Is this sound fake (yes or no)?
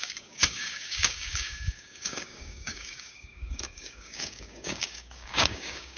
yes